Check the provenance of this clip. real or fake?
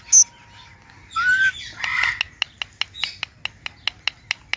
real